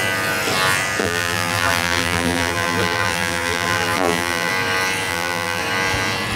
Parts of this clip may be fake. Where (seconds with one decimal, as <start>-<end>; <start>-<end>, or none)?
1.0-4.5; 5.1-5.6